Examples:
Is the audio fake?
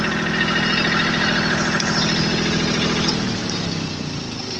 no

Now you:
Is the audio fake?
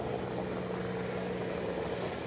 no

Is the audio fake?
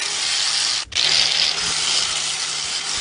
no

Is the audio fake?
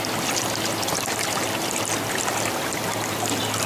no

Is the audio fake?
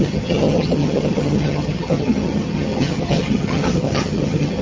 yes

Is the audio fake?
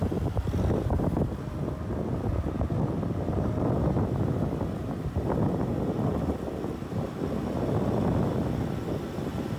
no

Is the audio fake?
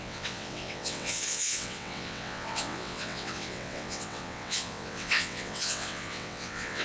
yes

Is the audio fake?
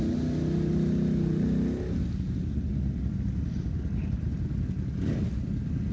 no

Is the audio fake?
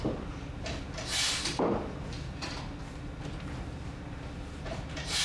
no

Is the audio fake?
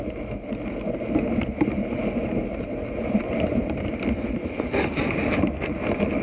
yes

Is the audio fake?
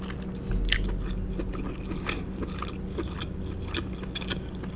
no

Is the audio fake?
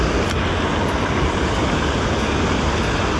no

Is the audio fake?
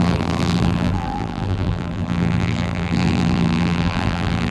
yes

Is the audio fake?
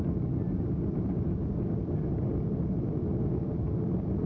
no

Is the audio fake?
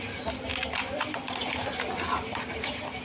no